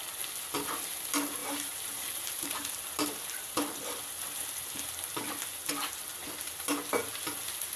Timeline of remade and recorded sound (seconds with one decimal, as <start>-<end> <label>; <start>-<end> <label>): 0.0-1.4 recorded; 1.4-4.0 remade; 4.0-6.1 recorded; 6.1-6.8 remade; 6.8-7.8 recorded